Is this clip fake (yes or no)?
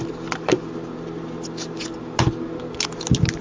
no